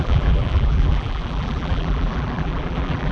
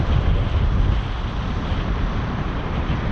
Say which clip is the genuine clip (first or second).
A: second